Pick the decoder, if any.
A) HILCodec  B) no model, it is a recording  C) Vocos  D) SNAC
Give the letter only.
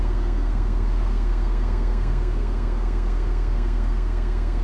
D